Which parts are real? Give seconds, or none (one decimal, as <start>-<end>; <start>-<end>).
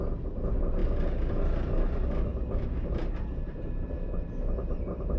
0.0-2.3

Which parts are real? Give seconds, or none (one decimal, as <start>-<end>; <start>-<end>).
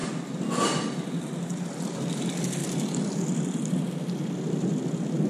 2.2-5.3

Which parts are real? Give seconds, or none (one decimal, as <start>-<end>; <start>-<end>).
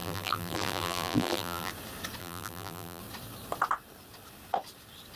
1.7-2.2; 3.0-5.2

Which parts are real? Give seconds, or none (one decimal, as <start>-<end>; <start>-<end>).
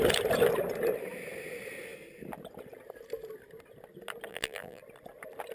0.0-4.3; 4.8-5.5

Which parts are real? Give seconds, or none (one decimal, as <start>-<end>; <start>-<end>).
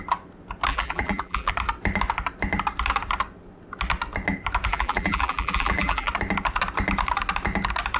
0.0-0.7; 1.5-4.7; 6.1-8.0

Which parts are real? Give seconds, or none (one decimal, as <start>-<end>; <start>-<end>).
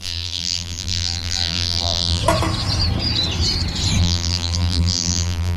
2.2-4.0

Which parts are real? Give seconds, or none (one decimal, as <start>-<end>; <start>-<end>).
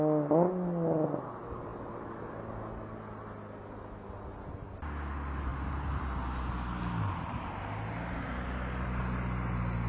0.0-5.5; 6.8-9.9